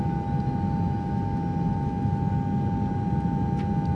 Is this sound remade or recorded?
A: recorded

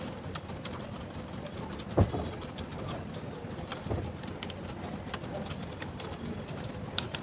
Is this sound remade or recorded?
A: remade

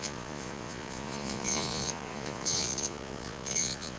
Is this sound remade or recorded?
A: remade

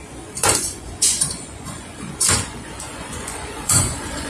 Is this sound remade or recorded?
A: remade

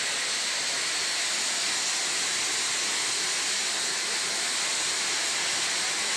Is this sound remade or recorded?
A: recorded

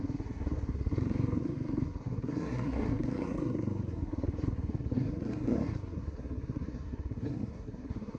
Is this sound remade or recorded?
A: remade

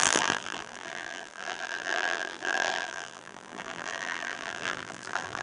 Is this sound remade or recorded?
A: remade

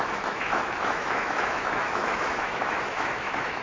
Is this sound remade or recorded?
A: remade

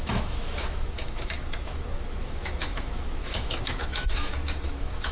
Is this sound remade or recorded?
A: remade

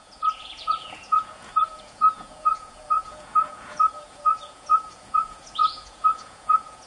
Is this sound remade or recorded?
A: remade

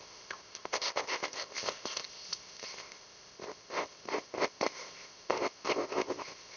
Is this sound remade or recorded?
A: remade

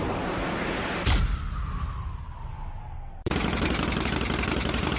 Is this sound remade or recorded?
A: recorded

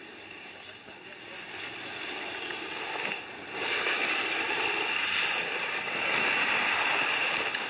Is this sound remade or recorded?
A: remade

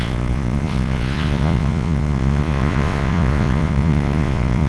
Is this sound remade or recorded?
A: remade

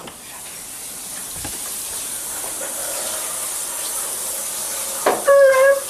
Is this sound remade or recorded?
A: recorded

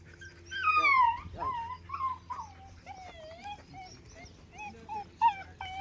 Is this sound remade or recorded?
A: recorded